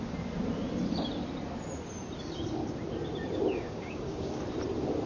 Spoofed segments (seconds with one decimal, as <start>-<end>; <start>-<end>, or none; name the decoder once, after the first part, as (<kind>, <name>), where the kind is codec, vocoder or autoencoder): 3.5-4.4 (codec, DAC)